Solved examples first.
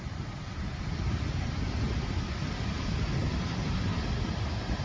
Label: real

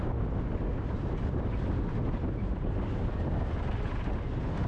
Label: real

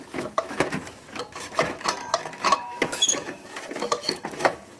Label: fake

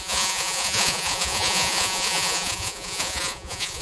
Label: fake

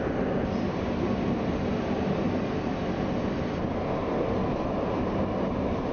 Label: real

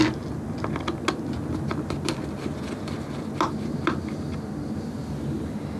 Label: real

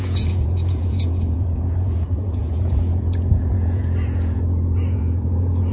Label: fake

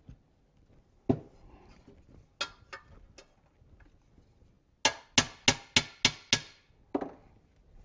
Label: real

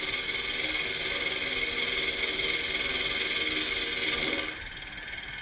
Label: real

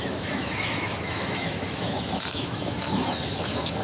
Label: fake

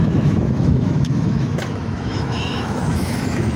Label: fake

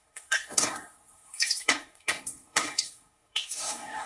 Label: fake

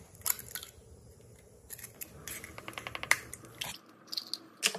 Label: real